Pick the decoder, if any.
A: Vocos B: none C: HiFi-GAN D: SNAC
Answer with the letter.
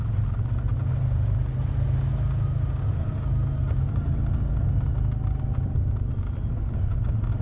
B